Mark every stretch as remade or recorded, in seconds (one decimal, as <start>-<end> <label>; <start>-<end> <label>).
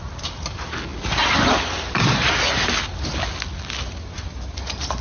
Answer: 0.0-5.0 recorded